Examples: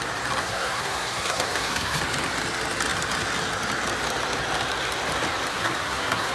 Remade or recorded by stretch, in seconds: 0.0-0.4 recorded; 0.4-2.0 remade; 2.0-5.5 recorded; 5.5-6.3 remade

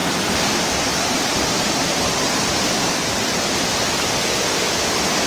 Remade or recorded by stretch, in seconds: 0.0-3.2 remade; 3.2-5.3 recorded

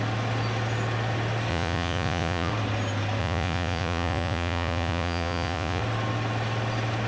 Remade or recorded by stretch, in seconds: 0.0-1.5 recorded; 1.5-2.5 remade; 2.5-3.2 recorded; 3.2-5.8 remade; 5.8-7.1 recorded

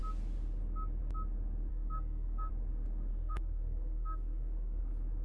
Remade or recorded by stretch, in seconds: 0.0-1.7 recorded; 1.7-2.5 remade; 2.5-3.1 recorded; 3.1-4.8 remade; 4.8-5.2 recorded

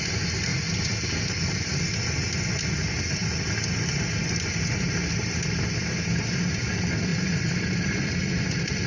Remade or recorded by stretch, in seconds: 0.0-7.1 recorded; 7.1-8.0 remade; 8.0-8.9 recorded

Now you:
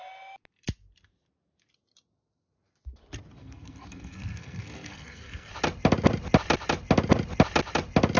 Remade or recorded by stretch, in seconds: 0.0-3.4 recorded; 3.4-5.5 remade; 5.5-8.2 recorded